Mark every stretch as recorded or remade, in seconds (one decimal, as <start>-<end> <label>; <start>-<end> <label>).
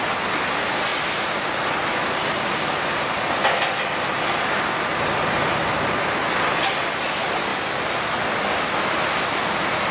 0.0-9.9 recorded